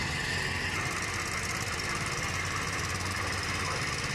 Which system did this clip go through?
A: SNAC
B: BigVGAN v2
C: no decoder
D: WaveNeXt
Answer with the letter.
C